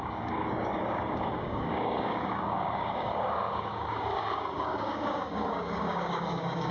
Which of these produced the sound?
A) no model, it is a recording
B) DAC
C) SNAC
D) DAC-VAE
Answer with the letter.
B